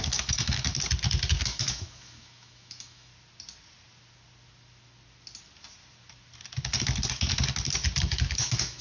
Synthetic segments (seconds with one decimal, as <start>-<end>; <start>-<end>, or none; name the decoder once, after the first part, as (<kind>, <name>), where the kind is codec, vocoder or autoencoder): 0.0-0.7 (autoencoder, DAC-VAE); 1.3-3.1; 8.0-8.8